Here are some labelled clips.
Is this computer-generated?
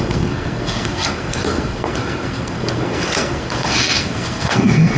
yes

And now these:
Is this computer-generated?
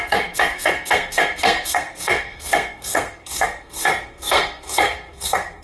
yes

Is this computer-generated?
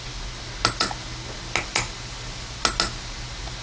no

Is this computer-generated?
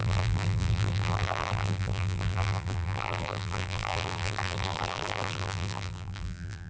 yes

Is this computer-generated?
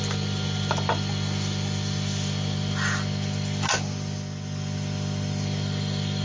no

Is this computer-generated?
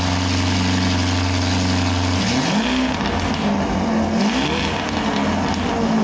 no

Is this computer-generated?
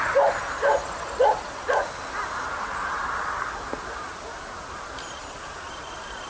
no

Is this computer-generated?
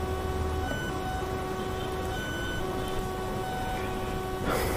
no